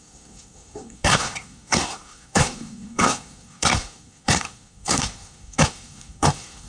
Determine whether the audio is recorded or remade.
remade